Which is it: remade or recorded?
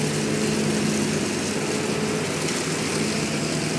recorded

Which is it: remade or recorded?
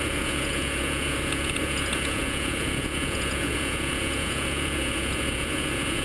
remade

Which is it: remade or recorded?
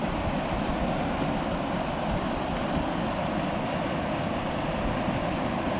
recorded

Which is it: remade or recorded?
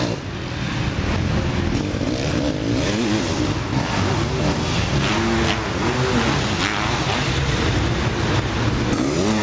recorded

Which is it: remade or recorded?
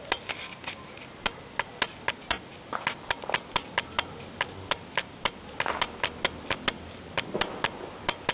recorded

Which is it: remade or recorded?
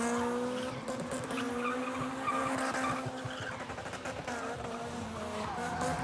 recorded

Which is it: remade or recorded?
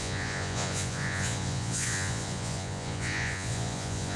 remade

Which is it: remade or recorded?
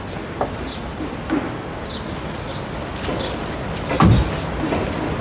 recorded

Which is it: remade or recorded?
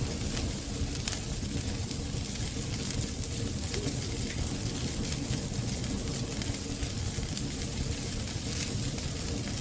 recorded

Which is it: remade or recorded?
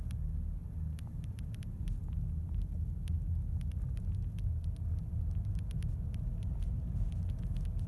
recorded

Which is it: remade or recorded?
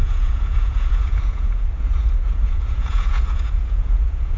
remade